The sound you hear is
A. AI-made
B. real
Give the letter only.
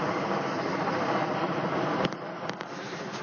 B